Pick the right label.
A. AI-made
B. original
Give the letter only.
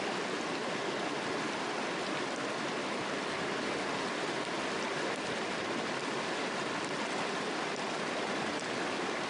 B